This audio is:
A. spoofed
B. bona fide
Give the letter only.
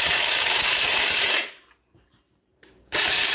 A